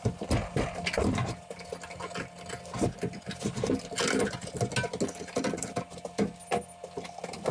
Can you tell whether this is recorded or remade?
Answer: recorded